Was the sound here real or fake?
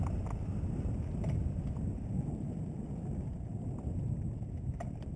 real